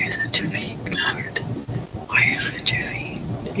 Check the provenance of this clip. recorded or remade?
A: recorded